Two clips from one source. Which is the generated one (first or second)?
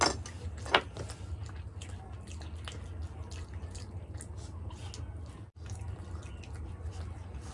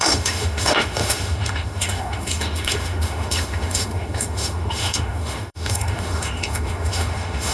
second